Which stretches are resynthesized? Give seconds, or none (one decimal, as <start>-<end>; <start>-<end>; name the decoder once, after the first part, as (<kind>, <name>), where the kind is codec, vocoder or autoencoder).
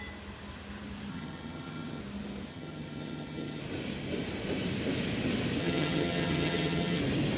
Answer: 1.1-2.0 (vocoder, HiFi-GAN); 2.5-3.6; 5.6-7.0